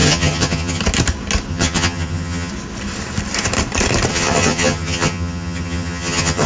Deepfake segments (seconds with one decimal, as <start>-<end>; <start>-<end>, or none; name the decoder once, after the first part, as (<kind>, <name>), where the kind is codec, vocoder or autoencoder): 0.0-0.8 (vocoder, HiFi-GAN); 1.5-2.5; 4.1-6.5